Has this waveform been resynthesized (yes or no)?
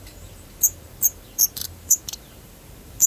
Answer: yes